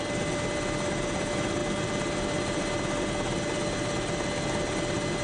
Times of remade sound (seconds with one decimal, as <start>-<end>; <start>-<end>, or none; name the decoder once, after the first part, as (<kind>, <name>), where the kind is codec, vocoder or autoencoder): none

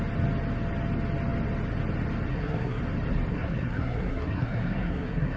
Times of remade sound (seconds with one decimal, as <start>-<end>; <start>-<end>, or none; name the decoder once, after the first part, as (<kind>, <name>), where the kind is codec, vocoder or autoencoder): 2.3-2.8 (codec, SNAC); 3.3-5.4